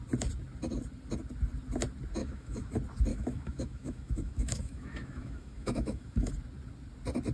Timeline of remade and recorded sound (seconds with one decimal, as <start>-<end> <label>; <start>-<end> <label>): 0.0-2.2 recorded; 2.2-2.7 remade; 2.7-3.1 recorded; 3.1-6.3 remade; 6.3-7.3 recorded